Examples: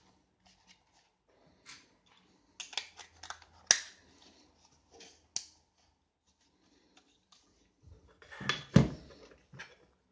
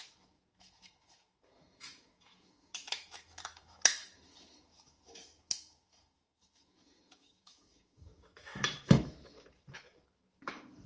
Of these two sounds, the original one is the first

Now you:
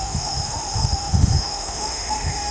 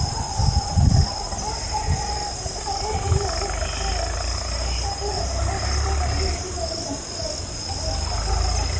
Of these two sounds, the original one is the second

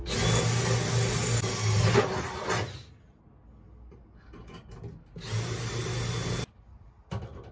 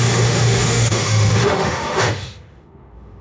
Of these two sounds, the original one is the first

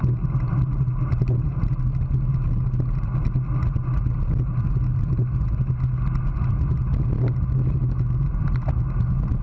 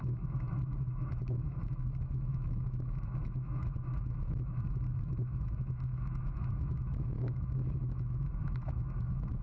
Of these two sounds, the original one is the first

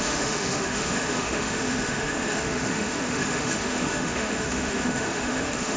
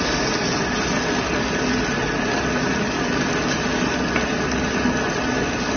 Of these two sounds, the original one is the second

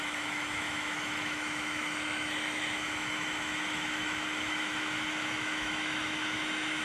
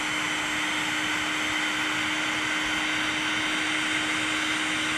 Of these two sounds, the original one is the second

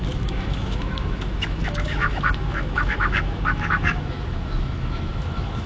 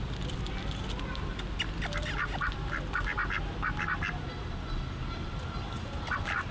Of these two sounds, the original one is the second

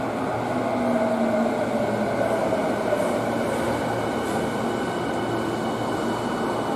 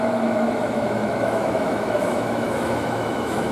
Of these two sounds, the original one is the first